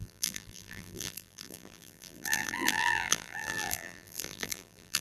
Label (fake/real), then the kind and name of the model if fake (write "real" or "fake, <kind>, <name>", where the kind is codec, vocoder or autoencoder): fake, vocoder, BigVGAN v2